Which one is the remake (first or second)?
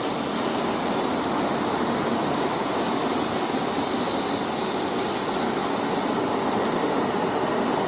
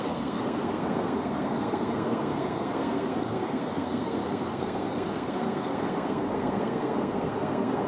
second